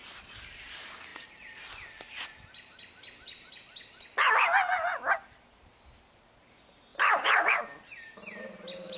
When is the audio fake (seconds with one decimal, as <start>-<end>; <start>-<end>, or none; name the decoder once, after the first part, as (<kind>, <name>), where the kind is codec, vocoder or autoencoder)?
none